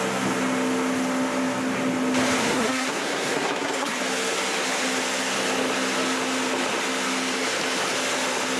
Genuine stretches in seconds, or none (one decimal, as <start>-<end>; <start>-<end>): 0.0-2.4; 4.0-8.6

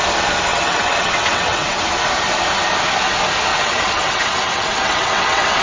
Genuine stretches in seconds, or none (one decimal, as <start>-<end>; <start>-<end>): 0.0-0.5; 1.8-3.5

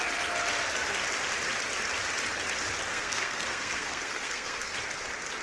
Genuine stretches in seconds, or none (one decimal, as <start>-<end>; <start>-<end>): 0.0-2.9; 4.7-5.4

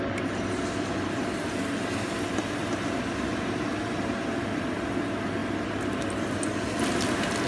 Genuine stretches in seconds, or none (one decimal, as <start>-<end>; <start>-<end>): 0.0-7.5